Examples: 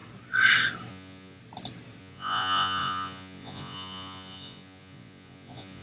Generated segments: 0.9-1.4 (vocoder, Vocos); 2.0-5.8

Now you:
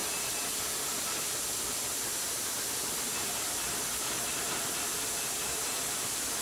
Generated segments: 0.5-6.4 (vocoder, BigVGAN v2)

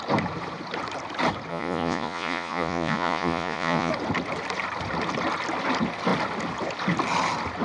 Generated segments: 1.5-3.9 (vocoder, Vocos)

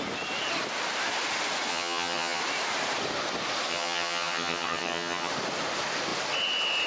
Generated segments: 1.7-2.4 (vocoder, HiFi-GAN); 3.7-5.3

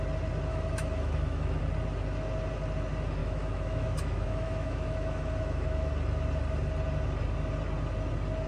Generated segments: 0.5-1.6 (autoencoder, DAC-VAE); 3.2-5.9

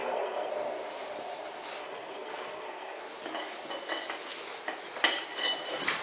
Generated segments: 0.0-0.5 (codec, SNAC); 1.8-3.0

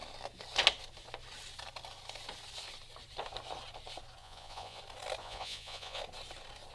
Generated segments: 4.2-4.8 (vocoder, Vocos); 5.2-6.0